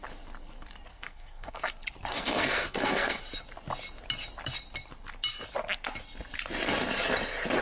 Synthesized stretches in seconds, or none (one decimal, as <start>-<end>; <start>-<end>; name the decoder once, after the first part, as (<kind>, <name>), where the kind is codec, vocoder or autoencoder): 0.9-1.7 (codec, SNAC); 2.1-3.2